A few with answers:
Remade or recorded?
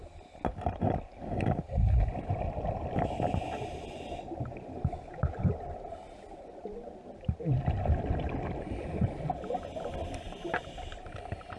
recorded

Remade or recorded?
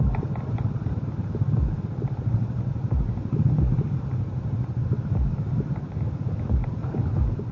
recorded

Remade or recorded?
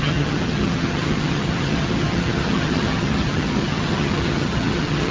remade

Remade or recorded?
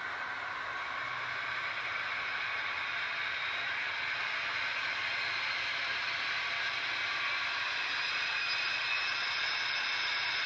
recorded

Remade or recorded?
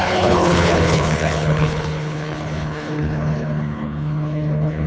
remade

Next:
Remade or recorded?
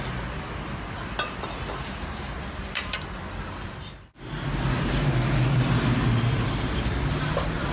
recorded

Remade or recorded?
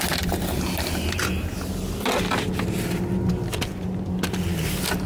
recorded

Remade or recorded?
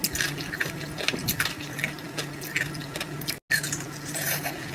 recorded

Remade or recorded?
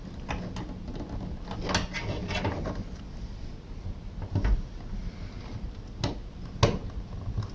recorded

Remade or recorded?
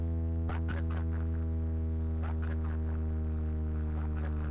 recorded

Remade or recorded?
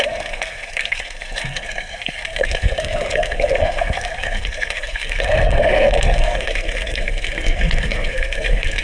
remade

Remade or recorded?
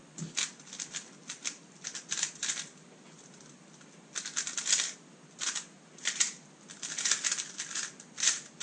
recorded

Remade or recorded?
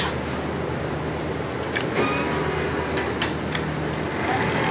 recorded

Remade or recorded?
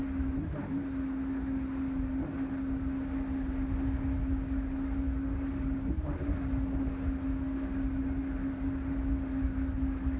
recorded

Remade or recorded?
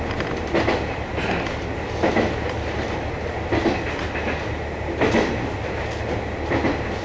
recorded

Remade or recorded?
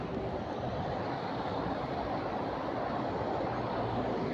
remade